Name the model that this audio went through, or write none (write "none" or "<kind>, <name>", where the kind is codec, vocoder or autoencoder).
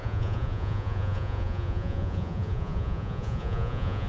vocoder, Vocos